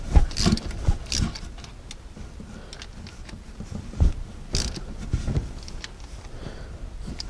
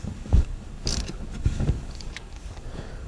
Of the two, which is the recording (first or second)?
first